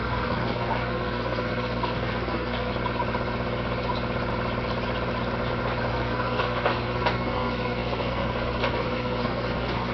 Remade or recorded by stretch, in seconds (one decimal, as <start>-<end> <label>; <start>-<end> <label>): 0.0-2.7 remade; 2.7-5.9 recorded; 5.9-9.9 remade